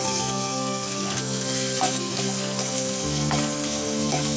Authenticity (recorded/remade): remade